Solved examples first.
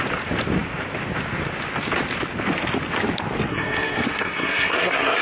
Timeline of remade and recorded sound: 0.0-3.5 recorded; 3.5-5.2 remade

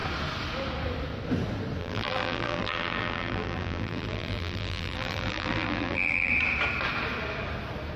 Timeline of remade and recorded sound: 0.0-1.8 recorded; 1.8-6.3 remade; 6.3-8.0 recorded

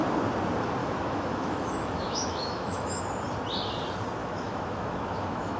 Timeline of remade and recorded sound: 0.0-0.8 recorded; 0.8-3.0 remade; 3.0-4.2 recorded; 4.2-5.6 remade

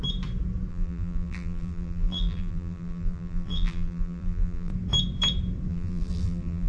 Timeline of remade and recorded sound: 0.0-0.7 recorded; 0.7-4.7 remade; 4.7-5.7 recorded; 5.7-6.7 remade

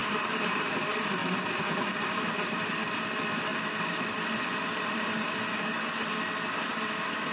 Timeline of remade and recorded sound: 0.0-0.7 remade; 0.7-1.2 recorded; 1.2-2.6 remade; 2.6-3.5 recorded; 3.5-5.6 remade; 5.6-7.3 recorded

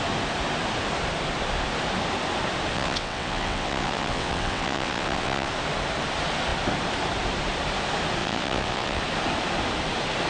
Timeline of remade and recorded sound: 0.0-2.7 recorded; 2.7-5.5 remade; 5.5-8.2 recorded; 8.2-9.0 remade; 9.0-10.3 recorded

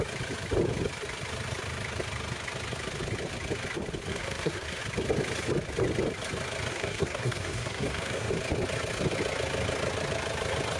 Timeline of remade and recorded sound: 0.0-4.1 recorded; 4.1-4.8 remade; 4.8-6.7 recorded; 6.7-8.3 remade; 8.3-10.8 recorded